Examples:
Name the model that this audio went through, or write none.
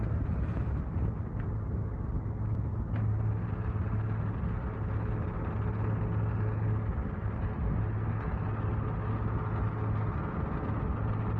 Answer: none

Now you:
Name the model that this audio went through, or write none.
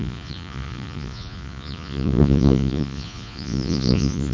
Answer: vocoder, Vocos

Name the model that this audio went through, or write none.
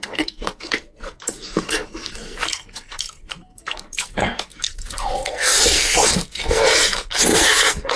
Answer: codec, SNAC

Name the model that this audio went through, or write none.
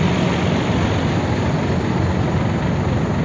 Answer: none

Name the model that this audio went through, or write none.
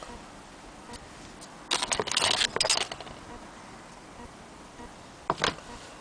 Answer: none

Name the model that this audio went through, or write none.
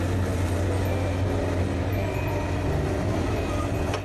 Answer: none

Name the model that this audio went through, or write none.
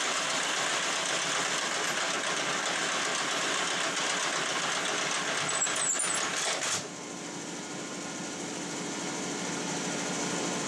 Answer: none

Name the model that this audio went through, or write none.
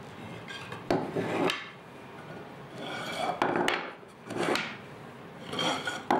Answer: none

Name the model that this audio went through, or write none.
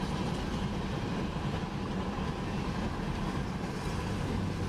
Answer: none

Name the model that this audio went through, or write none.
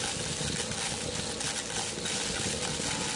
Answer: none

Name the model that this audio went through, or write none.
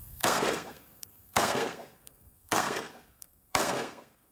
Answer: codec, SNAC